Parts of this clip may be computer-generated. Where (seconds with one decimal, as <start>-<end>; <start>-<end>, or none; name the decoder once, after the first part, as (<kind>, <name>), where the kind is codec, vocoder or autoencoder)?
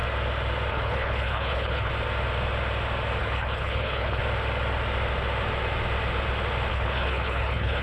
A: 0.7-1.9 (codec, HILCodec); 3.2-4.2; 6.7-7.8